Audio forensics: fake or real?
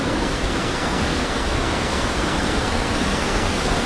fake